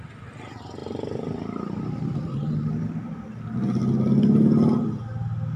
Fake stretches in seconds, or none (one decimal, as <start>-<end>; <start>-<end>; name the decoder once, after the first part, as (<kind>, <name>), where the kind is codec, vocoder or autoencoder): none